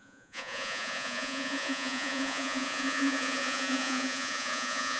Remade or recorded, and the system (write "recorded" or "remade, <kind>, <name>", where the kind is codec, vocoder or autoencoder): remade, vocoder, Vocos